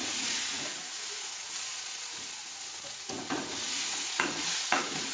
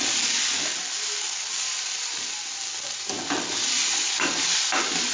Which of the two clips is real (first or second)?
second